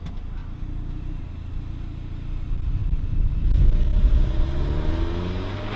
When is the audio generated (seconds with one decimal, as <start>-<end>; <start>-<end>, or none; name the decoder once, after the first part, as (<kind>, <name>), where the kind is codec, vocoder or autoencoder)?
none